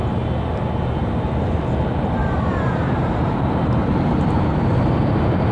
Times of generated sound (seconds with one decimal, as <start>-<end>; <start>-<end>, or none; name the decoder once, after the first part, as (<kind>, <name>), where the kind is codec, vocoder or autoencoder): 1.0-1.6 (vocoder, BigVGAN v2); 2.2-5.5

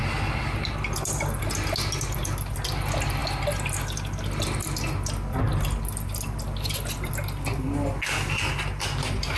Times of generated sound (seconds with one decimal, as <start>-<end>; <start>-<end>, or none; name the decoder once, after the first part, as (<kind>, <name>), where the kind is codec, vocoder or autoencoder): none

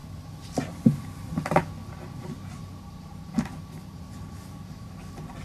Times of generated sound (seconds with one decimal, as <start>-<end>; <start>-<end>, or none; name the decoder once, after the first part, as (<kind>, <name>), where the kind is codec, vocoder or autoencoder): none

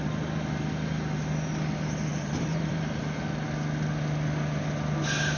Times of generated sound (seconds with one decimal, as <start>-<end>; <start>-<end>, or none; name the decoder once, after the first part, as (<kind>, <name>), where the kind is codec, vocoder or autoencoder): 2.1-3.0 (vocoder, BigVGAN v2)

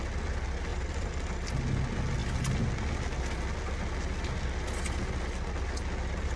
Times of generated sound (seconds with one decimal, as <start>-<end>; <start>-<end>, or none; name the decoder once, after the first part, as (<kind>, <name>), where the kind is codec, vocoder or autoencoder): 0.7-1.5 (vocoder, BigVGAN v2)

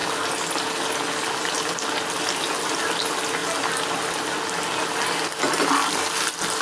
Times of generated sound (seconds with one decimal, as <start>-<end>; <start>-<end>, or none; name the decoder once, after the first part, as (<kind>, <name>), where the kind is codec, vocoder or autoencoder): none